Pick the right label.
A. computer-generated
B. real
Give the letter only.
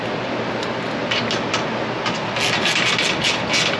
B